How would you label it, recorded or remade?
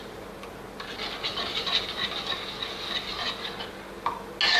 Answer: recorded